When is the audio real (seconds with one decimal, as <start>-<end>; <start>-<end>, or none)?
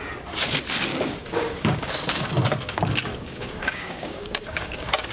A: 0.0-0.9; 2.3-3.1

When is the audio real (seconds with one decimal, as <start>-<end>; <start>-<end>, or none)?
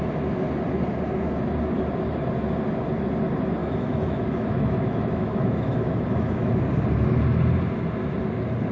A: 0.0-3.6; 6.6-8.7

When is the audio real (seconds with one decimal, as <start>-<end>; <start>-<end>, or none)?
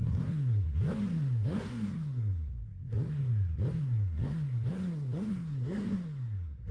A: 3.2-3.8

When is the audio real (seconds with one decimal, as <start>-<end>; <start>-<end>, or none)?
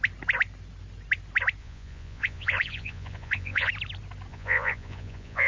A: 0.0-1.6; 3.7-4.3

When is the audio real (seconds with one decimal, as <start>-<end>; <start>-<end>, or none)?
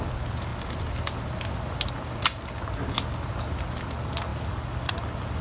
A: 0.0-5.4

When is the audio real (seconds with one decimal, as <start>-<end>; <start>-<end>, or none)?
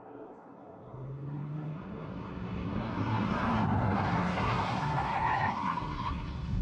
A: none